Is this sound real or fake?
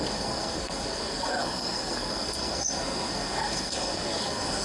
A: fake